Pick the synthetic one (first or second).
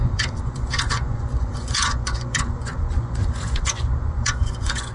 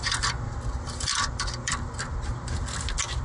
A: first